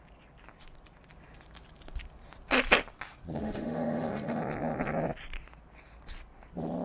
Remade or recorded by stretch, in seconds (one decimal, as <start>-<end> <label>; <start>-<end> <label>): 0.0-3.4 recorded; 3.4-4.4 remade; 4.4-6.8 recorded

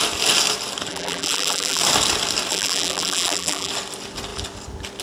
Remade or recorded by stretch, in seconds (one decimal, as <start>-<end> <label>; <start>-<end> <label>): 0.0-0.9 recorded; 0.9-1.8 remade; 1.8-2.5 recorded; 2.5-3.7 remade; 3.7-5.0 recorded

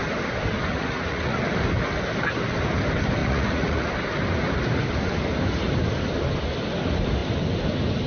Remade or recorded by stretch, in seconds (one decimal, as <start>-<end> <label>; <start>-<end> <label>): 0.0-0.7 recorded; 0.7-1.4 remade; 1.4-3.2 recorded; 3.2-3.9 remade; 3.9-8.1 recorded

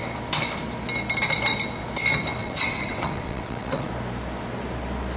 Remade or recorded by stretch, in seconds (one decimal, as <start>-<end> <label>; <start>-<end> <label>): 0.0-2.4 recorded; 2.4-3.9 remade; 3.9-5.2 recorded

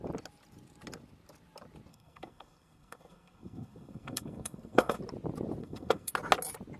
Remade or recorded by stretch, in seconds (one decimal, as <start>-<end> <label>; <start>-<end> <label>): 0.0-1.9 recorded; 1.9-5.0 remade; 5.0-5.6 recorded; 5.6-6.1 remade; 6.1-6.8 recorded

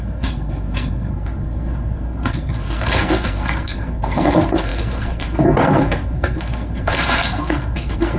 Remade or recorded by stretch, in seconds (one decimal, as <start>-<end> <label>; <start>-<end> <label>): 0.0-8.2 remade